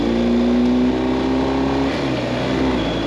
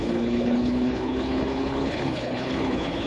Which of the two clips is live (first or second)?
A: first